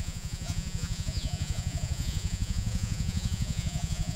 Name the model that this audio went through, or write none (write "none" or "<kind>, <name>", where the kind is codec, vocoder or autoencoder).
vocoder, Vocos